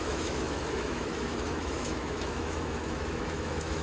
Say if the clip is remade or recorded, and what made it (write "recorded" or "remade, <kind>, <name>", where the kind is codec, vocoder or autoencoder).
remade, autoencoder, DAC-VAE